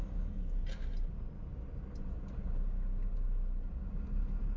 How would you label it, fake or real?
real